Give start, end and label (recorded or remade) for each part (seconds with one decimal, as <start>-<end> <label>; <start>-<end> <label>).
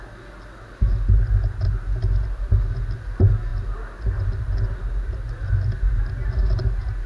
0.0-7.1 recorded